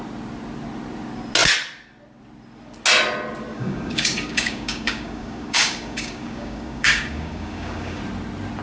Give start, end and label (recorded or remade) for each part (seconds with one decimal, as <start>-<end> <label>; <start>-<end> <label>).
0.0-3.5 recorded; 3.5-8.0 remade; 8.0-8.6 recorded